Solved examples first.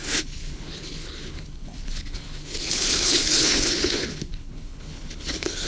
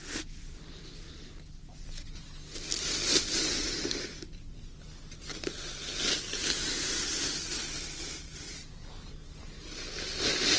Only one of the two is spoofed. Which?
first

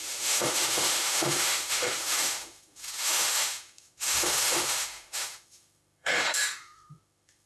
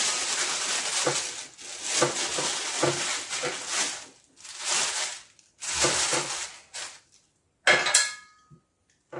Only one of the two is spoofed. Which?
first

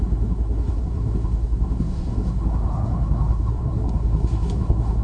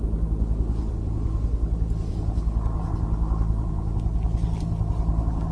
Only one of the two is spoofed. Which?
first